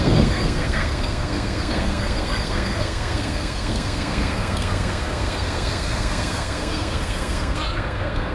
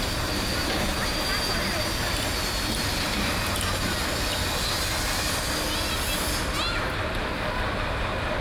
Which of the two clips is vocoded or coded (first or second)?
first